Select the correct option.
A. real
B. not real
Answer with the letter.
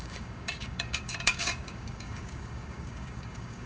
B